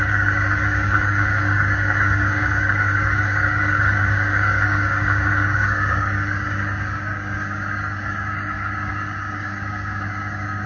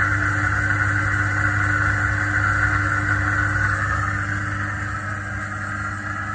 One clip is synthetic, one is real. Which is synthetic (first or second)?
first